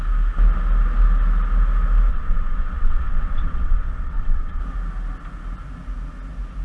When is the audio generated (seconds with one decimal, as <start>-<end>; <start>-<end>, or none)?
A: 2.1-4.6